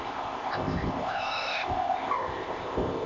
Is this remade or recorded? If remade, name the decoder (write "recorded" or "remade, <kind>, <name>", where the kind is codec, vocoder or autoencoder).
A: remade, codec, ZipCodec